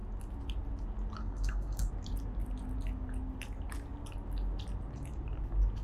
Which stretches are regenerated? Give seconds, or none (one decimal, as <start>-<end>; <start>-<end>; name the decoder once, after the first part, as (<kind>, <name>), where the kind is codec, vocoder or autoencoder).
1.2-1.9 (codec, SNAC)

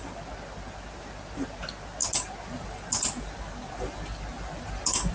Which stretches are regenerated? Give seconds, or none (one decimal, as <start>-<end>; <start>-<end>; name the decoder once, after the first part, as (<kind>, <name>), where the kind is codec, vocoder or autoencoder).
none

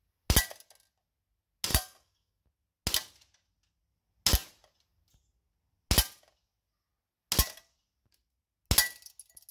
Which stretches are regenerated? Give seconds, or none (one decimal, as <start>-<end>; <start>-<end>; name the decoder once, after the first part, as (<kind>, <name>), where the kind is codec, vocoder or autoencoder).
1.7-2.4 (codec, SNAC)

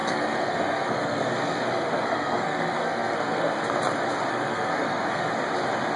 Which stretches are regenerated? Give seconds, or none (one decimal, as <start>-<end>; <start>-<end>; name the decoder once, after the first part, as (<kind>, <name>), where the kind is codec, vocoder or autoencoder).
0.0-3.6 (codec, SNAC); 4.3-5.3

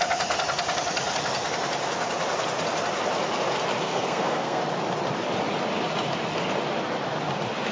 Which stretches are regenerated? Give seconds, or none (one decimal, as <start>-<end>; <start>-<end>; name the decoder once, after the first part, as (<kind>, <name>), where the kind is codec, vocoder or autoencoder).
3.8-4.6 (codec, SNAC)